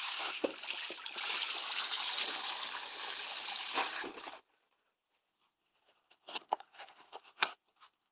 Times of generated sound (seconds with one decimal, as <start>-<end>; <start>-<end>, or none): 0.0-0.5; 5.3-8.1